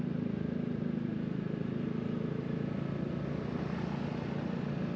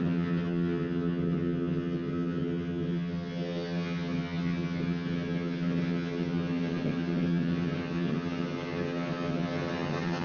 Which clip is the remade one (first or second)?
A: second